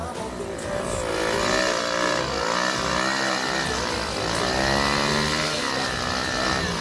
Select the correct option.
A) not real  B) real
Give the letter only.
B